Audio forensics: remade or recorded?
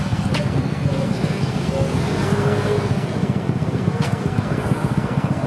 remade